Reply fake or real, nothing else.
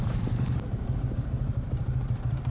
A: fake